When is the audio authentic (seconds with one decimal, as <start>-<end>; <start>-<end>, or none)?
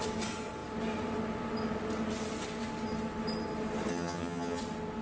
0.0-3.9; 4.6-5.0